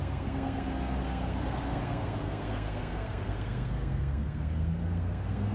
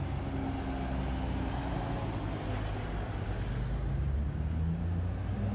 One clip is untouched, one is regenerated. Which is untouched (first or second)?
second